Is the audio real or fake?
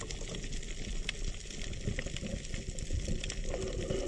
real